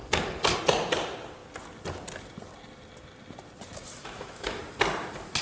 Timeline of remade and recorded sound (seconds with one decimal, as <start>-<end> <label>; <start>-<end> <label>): 0.0-4.0 recorded; 4.0-4.6 remade; 4.6-5.4 recorded